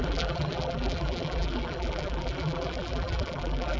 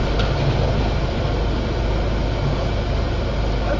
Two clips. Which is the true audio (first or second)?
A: second